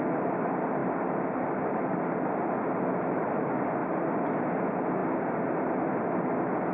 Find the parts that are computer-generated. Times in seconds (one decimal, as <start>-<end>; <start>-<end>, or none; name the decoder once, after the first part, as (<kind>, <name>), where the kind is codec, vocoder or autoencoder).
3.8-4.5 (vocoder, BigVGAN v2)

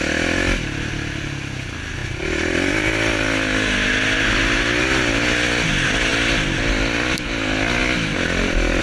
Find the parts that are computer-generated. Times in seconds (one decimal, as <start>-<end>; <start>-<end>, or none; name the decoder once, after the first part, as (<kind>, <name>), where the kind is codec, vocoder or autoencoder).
none

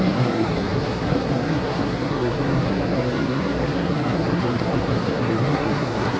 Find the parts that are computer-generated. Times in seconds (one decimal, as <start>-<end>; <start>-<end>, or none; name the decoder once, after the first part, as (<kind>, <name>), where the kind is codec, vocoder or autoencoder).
0.0-6.2 (codec, SNAC)